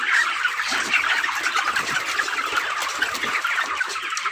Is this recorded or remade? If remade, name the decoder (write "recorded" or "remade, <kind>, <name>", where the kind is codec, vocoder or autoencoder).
recorded